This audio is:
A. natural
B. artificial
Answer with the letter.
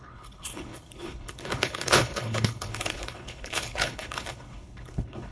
B